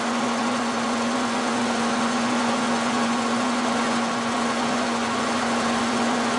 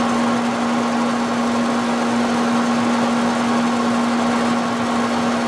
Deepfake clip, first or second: first